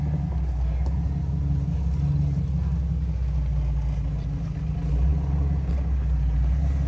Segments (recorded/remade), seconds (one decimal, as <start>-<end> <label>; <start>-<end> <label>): 0.0-6.9 recorded

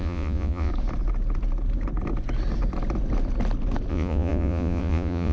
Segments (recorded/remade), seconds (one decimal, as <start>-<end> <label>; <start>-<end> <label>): 0.0-0.7 remade; 0.7-3.9 recorded; 3.9-5.3 remade

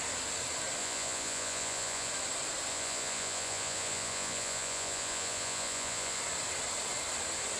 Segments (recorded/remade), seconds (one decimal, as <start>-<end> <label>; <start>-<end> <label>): 0.0-0.8 recorded; 0.8-2.1 remade; 2.1-2.7 recorded; 2.7-6.2 remade; 6.2-7.6 recorded

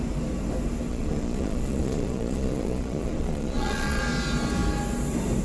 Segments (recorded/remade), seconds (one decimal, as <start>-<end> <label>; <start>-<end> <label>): 0.0-0.9 recorded; 0.9-4.0 remade; 4.0-5.4 recorded

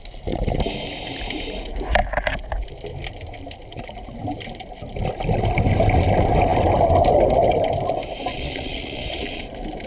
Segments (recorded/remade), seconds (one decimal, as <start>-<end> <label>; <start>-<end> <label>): 0.0-8.3 recorded; 8.3-9.4 remade; 9.4-9.9 recorded

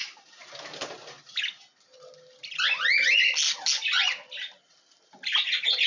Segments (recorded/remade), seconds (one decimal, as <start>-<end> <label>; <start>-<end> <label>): 0.0-5.9 recorded

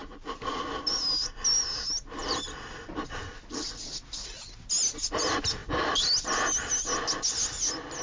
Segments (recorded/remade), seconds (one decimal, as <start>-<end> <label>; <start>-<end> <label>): 0.0-0.6 remade; 0.6-8.0 recorded